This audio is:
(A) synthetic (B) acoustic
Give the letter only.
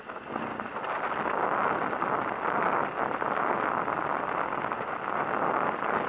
B